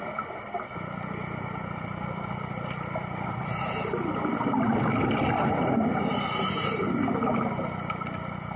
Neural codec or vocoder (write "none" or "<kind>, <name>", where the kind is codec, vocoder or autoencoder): none